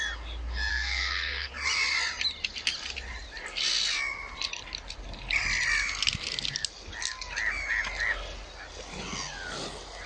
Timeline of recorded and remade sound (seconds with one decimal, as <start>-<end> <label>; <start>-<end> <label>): 0.0-0.7 recorded; 0.7-1.5 remade; 1.5-10.1 recorded